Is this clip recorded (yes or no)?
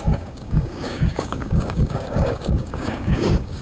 no